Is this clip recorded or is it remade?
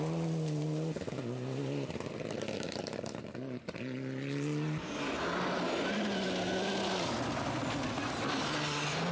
recorded